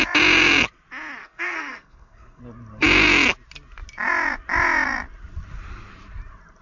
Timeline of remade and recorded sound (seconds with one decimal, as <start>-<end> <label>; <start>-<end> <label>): 0.0-1.2 recorded; 1.2-2.4 remade; 2.4-6.6 recorded